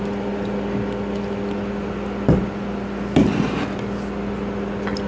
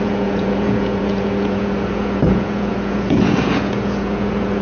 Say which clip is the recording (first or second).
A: first